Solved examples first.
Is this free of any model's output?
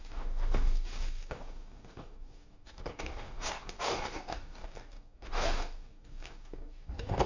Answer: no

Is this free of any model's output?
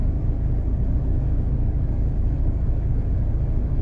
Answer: no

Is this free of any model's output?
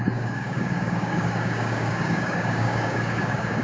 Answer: no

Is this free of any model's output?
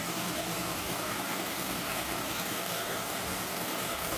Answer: no